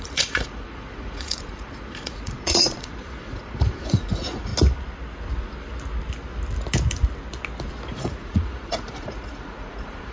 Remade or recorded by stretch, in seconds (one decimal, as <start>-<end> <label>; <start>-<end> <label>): 0.0-4.5 remade; 4.5-7.9 recorded; 7.9-10.1 remade